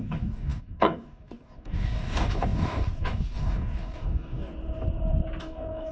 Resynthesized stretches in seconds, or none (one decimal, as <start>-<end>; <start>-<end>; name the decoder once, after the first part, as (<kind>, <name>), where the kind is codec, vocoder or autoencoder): 0.0-4.5 (codec, DAC); 5.4-5.9